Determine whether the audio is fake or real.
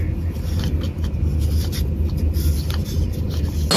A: real